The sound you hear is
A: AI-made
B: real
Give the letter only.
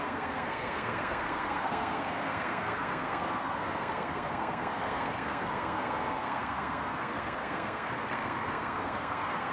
A